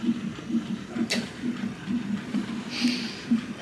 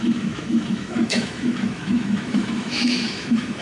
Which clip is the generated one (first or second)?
second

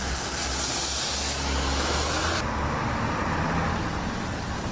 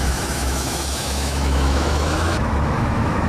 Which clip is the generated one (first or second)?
second